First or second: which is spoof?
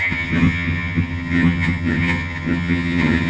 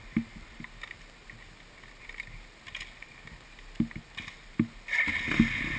first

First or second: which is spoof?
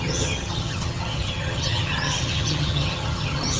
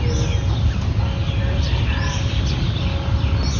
first